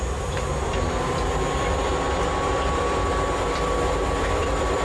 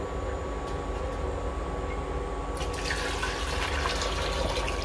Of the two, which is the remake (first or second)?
first